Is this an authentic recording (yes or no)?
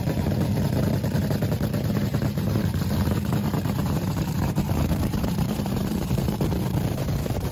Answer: no